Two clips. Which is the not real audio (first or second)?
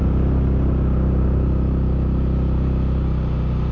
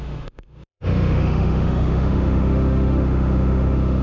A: second